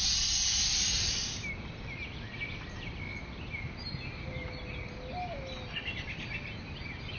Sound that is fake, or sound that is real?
real